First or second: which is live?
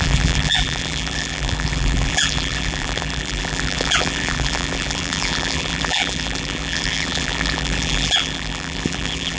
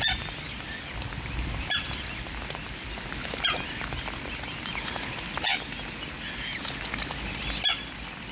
second